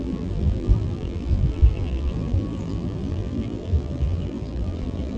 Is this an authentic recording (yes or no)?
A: no